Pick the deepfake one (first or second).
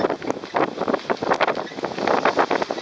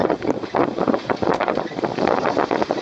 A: second